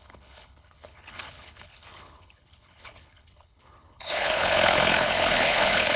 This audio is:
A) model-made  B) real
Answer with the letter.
A